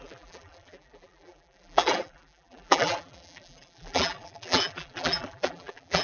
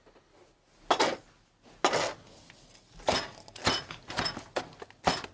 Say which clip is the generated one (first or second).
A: first